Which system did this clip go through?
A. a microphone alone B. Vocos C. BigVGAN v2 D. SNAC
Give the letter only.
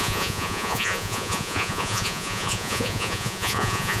B